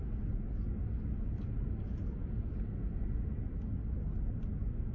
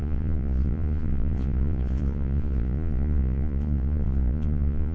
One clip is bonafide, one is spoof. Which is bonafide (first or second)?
first